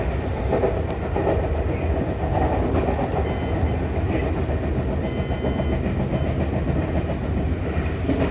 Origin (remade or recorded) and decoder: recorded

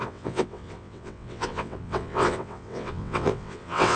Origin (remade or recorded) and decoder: remade, vocoder, WaveNeXt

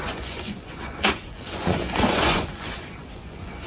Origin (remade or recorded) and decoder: remade, vocoder, Vocos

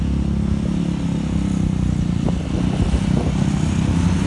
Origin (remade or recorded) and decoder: recorded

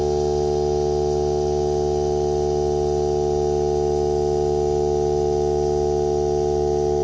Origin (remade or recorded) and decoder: recorded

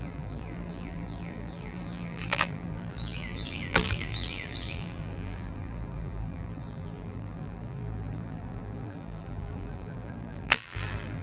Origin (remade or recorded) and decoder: remade, vocoder, BigVGAN v2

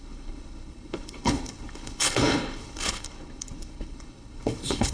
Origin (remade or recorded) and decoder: remade, codec, HILCodec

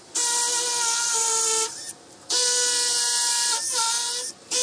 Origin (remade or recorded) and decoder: recorded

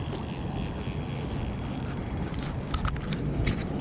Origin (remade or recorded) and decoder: recorded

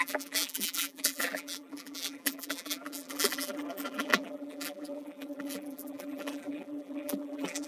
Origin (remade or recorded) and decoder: remade, vocoder, BigVGAN v2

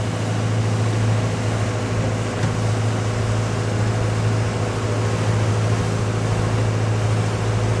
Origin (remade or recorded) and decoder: recorded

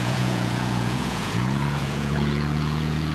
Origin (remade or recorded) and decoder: remade, vocoder, Vocos